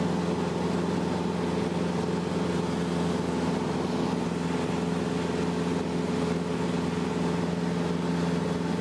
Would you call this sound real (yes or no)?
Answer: yes